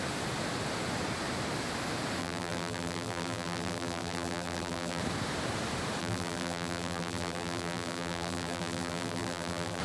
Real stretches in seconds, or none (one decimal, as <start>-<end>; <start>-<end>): 0.0-2.2; 5.0-6.0